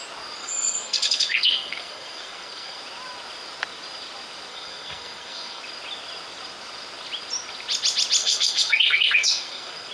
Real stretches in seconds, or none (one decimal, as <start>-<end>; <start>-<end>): 0.0-0.4; 2.8-4.5; 5.6-8.2